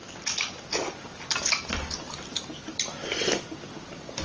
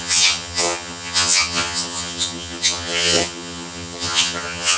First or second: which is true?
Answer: first